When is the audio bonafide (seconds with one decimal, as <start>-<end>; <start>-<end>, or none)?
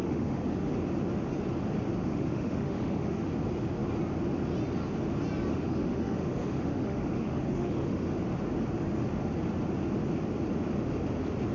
0.7-2.0; 3.3-5.5; 8.1-11.5